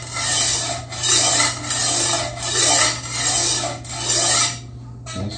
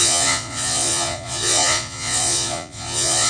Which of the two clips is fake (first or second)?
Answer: second